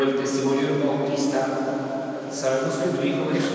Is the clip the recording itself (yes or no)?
no